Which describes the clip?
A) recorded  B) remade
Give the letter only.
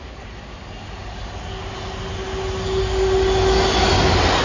A